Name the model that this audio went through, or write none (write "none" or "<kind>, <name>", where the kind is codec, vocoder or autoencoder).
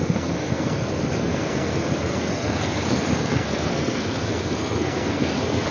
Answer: codec, SNAC